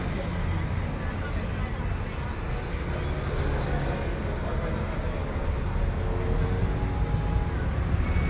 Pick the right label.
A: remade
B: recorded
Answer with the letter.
B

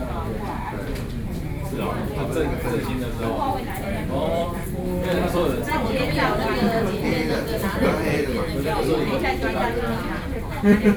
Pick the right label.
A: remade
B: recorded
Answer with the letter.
A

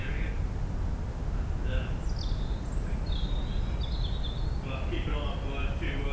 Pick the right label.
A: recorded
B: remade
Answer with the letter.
A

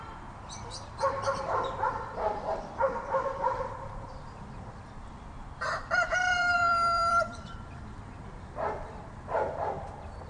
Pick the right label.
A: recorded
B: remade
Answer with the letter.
B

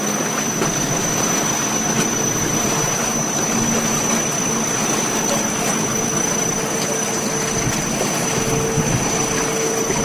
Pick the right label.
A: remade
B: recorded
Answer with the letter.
B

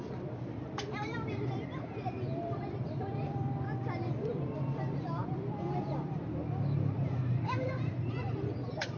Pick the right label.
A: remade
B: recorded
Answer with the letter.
A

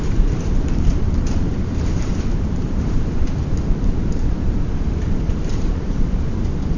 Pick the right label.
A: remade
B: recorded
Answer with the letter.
A